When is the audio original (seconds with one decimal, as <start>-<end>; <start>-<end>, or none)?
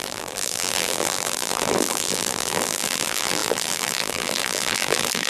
none